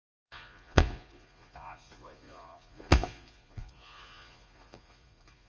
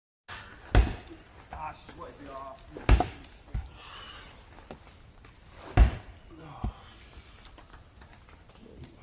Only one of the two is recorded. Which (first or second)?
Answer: second